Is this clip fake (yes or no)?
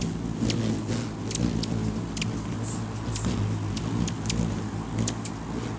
no